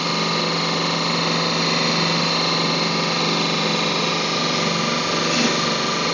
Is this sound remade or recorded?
recorded